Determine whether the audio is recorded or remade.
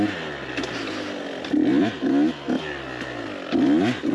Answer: recorded